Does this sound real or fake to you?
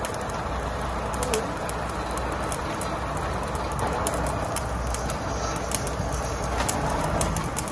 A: real